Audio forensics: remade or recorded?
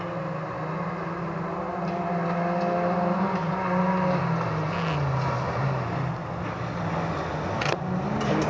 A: recorded